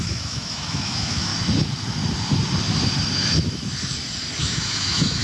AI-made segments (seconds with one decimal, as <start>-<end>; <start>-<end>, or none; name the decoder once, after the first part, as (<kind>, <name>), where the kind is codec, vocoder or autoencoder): 0.0-1.3 (autoencoder, DAC-VAE); 4.4-5.2